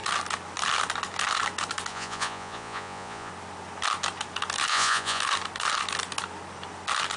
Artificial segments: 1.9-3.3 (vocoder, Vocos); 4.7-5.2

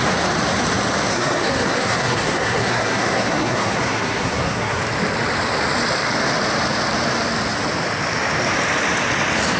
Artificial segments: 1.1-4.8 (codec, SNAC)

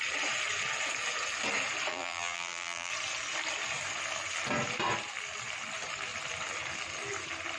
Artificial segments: 1.9-2.9 (vocoder, BigVGAN v2)

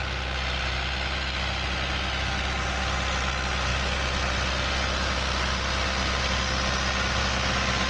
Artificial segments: none

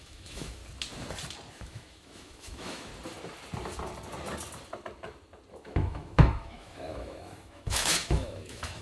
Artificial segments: 0.0-0.6 (autoencoder, DAC-VAE); 1.5-2.9; 5.5-8.8

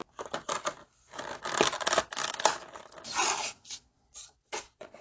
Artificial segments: 3.4-5.0 (vocoder, Vocos)